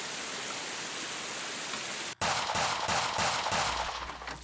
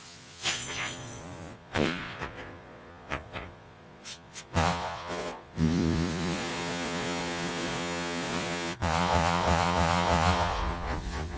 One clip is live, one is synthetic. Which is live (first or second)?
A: first